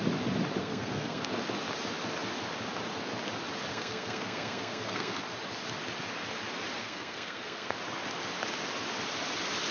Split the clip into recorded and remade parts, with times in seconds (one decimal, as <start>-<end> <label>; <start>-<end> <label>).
0.0-0.6 recorded; 0.6-1.2 remade; 1.2-3.7 recorded; 3.7-5.2 remade; 5.2-6.8 recorded; 6.8-7.7 remade; 7.7-9.7 recorded